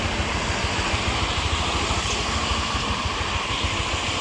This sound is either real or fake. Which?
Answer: real